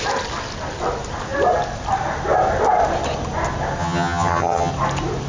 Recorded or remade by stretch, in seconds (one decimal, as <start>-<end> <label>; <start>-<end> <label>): 0.0-3.8 recorded; 3.8-4.7 remade; 4.7-5.3 recorded